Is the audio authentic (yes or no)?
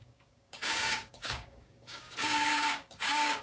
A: no